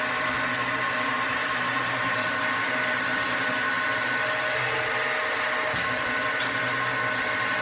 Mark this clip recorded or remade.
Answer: recorded